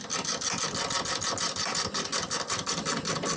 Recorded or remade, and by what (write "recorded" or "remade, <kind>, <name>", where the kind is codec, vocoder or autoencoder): recorded